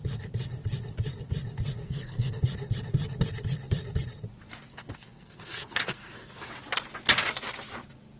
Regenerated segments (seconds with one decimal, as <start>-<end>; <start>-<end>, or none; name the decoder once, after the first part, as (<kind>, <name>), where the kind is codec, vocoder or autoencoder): 1.8-2.4 (codec, SNAC); 4.7-6.5